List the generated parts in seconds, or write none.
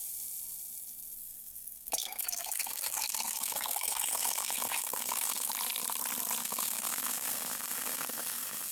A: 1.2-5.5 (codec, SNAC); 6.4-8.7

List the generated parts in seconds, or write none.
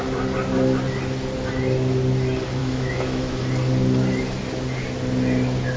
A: 2.6-3.4 (autoencoder, DAC-VAE)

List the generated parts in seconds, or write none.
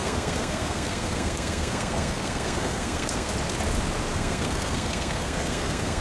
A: 0.0-3.3 (codec, SNAC); 4.1-6.0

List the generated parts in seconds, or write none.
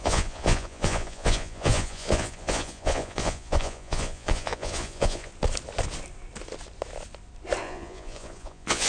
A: 0.0-5.3 (vocoder, Vocos); 7.6-8.9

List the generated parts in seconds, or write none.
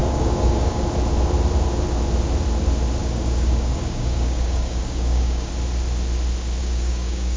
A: 0.0-0.8 (codec, DAC); 3.0-5.5; 6.6-7.4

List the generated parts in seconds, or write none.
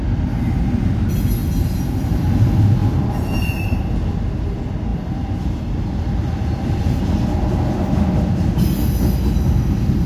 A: 1.4-2.3 (vocoder, BigVGAN v2); 2.8-3.8; 4.9-7.0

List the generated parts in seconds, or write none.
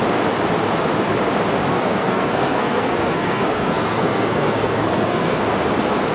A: 1.7-5.4 (codec, SNAC)